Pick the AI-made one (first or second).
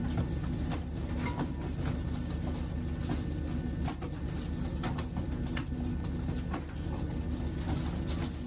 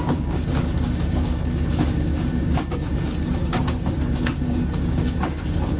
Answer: second